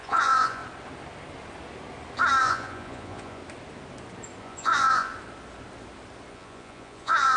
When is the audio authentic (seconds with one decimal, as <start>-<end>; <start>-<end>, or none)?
0.6-2.4; 3.4-4.4; 5.1-6.3